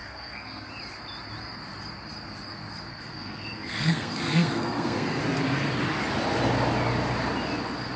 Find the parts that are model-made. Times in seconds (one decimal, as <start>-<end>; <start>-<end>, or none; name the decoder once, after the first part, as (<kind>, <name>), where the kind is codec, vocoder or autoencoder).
0.0-0.7 (codec, SNAC); 2.9-5.2